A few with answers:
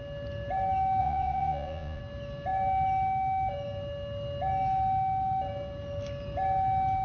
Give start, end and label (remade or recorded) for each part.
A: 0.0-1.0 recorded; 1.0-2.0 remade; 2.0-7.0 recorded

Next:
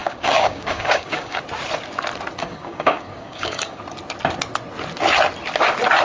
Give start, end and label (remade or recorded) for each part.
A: 0.0-1.4 remade; 1.4-2.4 recorded; 2.4-3.8 remade; 3.8-6.0 recorded

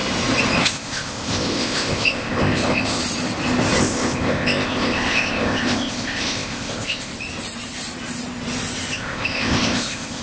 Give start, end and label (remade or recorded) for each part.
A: 0.0-0.6 recorded; 0.6-3.0 remade; 3.0-3.8 recorded; 3.8-7.1 remade; 7.1-8.9 recorded; 8.9-10.2 remade

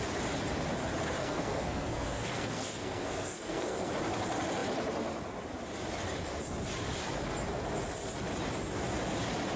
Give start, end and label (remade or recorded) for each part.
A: 0.0-1.2 recorded; 1.2-3.9 remade; 3.9-9.6 recorded

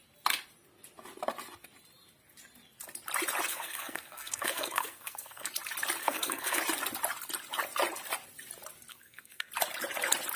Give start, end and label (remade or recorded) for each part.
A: 0.0-3.5 recorded; 3.5-5.5 remade; 5.5-6.0 recorded; 6.0-6.6 remade; 6.6-8.9 recorded; 8.9-9.5 remade; 9.5-10.4 recorded

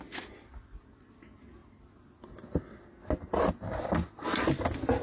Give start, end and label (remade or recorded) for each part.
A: 0.0-5.0 recorded

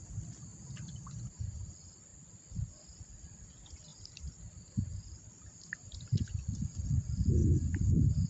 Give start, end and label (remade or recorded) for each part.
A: 0.0-8.3 recorded

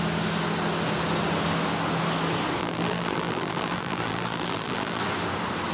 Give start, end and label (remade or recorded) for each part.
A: 0.0-2.6 recorded; 2.6-5.0 remade; 5.0-5.7 recorded